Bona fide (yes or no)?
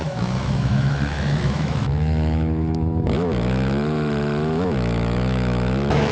no